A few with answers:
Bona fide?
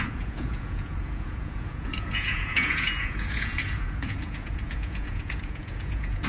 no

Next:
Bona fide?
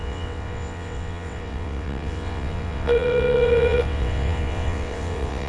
no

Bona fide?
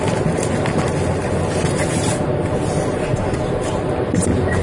yes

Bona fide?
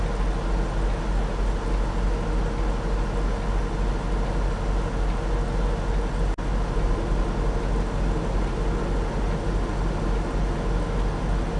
yes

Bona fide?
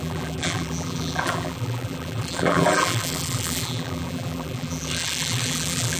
no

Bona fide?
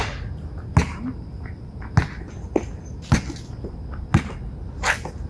yes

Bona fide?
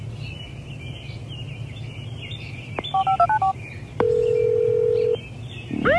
yes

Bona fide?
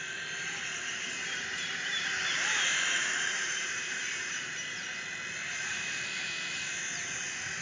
no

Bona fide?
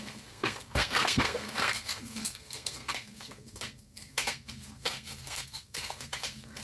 no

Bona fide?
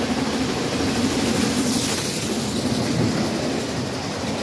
yes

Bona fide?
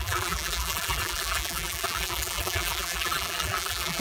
no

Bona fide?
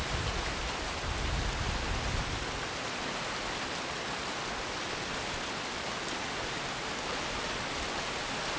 yes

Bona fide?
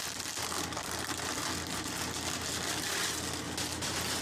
yes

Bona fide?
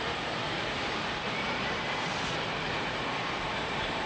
no